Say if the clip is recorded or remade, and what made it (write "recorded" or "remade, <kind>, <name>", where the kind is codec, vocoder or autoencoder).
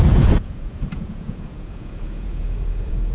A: remade, vocoder, Vocos